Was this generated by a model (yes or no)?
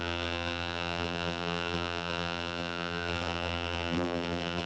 yes